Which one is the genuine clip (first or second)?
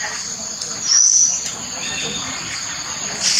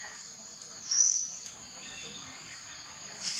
first